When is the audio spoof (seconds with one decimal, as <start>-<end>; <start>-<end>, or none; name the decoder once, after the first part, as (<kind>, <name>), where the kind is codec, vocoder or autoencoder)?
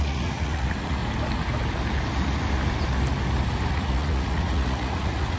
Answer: 0.0-1.0 (vocoder, Vocos); 3.7-5.4